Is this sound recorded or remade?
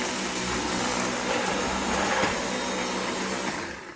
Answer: recorded